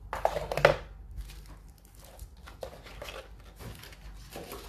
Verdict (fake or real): real